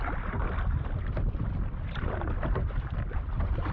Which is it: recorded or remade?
recorded